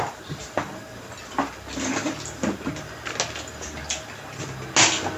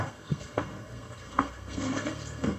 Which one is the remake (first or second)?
second